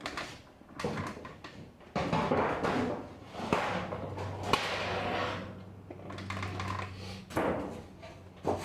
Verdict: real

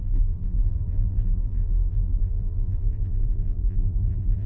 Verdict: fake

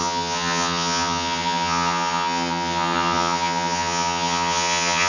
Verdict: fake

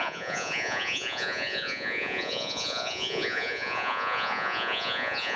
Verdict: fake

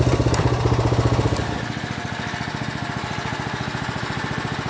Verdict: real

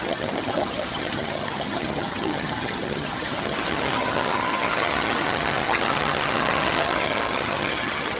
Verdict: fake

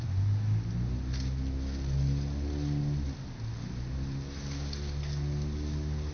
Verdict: real